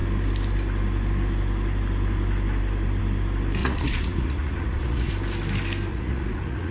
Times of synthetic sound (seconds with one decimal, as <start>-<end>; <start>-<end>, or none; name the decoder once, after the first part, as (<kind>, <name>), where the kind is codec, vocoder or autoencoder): 3.6-5.1 (vocoder, Vocos); 5.9-6.7